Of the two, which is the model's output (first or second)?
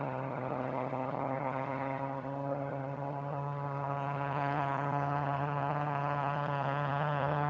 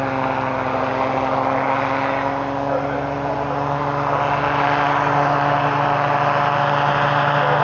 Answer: first